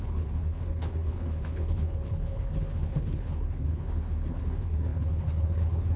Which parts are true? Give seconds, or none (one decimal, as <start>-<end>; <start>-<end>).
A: none